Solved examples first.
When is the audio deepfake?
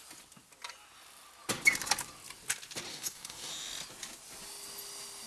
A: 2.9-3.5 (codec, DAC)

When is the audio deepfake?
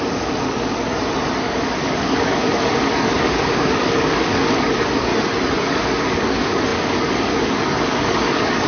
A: 0.0-0.9 (codec, DAC); 1.4-5.1; 5.7-8.7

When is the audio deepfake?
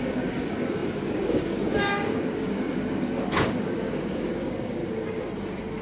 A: 0.0-4.8 (codec, DAC)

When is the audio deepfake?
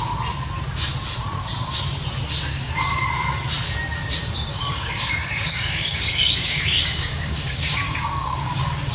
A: 2.5-3.1 (codec, DAC); 4.5-8.9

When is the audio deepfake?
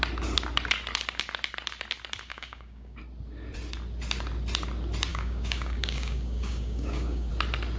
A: 2.3-3.0 (codec, DAC); 5.1-7.3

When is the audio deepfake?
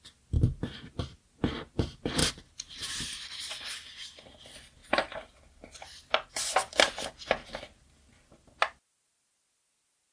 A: none